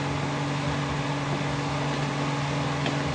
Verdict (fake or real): real